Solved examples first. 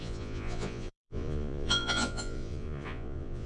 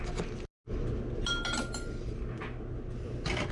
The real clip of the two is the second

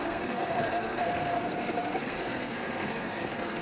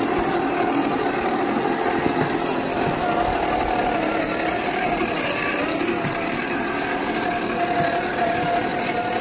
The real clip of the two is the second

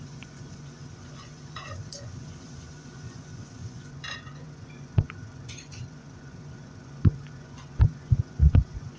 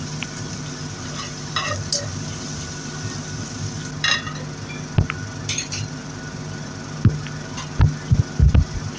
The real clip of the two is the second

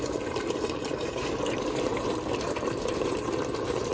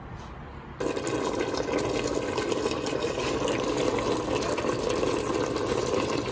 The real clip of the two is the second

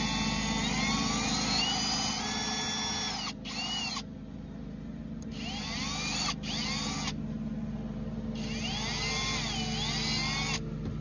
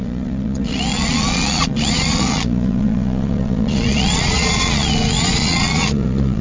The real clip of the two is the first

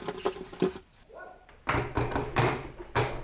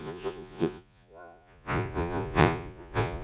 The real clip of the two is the first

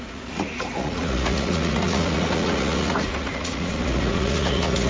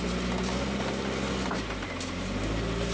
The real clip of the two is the second